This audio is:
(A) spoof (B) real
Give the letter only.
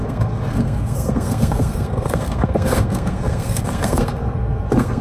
A